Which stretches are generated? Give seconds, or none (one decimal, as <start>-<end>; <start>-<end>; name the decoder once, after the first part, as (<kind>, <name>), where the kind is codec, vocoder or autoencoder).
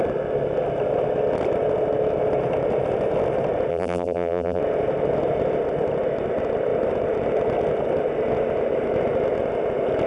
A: 3.7-4.6 (vocoder, BigVGAN v2)